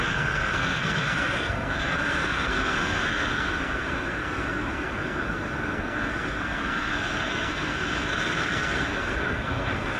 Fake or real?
fake